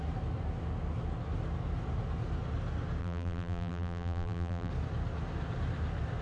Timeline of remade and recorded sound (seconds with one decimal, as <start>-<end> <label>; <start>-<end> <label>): 0.0-3.0 recorded; 3.0-4.7 remade; 4.7-6.2 recorded